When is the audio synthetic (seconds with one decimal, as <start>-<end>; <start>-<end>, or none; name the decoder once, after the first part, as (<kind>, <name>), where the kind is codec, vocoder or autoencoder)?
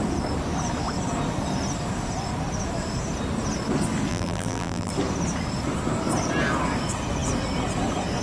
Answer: 4.1-4.9 (vocoder, BigVGAN v2)